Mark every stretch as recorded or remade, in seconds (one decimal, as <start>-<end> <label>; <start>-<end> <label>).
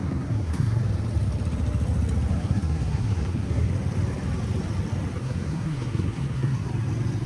0.0-0.8 remade; 0.8-2.3 recorded; 2.3-3.7 remade; 3.7-5.2 recorded; 5.2-6.7 remade; 6.7-7.3 recorded